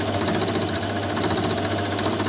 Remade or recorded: recorded